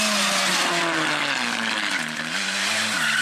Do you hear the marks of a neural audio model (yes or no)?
no